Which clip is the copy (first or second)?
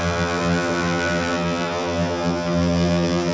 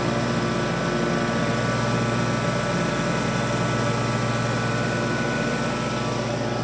first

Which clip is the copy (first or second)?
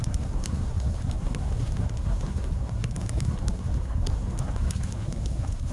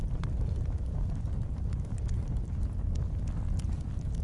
first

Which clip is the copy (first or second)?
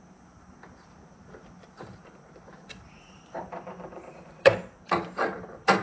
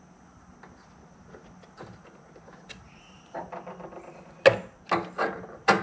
first